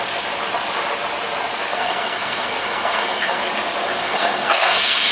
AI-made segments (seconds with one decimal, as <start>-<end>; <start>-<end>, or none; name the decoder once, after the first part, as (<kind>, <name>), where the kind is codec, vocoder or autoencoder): 1.7-3.4 (codec, SNAC); 4.0-5.1